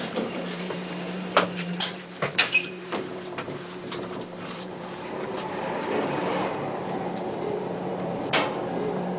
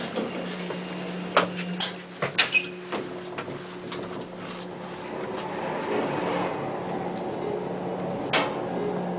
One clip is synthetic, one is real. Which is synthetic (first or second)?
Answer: first